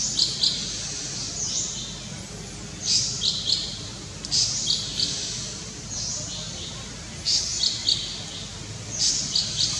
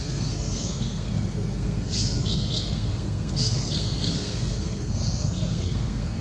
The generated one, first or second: second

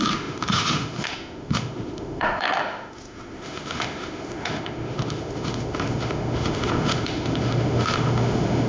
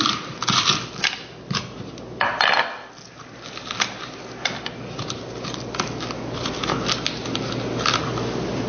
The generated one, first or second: first